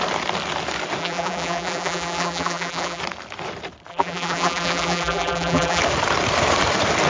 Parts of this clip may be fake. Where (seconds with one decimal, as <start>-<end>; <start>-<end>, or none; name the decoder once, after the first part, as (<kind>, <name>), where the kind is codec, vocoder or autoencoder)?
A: 1.0-3.0 (vocoder, BigVGAN v2); 3.9-5.8